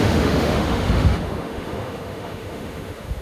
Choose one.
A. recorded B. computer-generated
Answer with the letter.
B